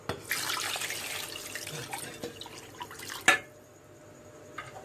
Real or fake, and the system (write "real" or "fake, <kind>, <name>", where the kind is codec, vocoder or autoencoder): real